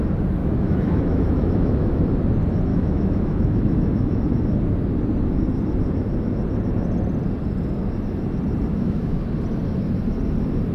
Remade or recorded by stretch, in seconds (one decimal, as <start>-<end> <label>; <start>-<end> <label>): 0.0-0.4 recorded; 0.4-2.0 remade; 2.0-2.7 recorded; 2.7-4.2 remade; 4.2-8.7 recorded; 8.7-9.2 remade; 9.2-10.7 recorded